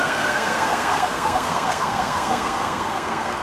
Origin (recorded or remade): remade